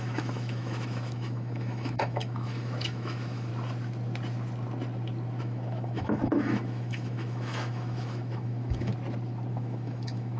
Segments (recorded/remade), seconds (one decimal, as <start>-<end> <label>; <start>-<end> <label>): 0.0-3.5 remade; 3.5-5.4 recorded; 5.4-8.9 remade; 8.9-9.5 recorded; 9.5-10.4 remade